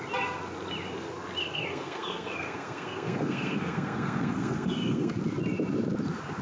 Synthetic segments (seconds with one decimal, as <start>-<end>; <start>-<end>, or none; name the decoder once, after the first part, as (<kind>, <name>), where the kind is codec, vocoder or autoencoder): 1.4-5.2 (codec, SNAC)